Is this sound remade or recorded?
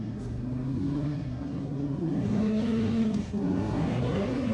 remade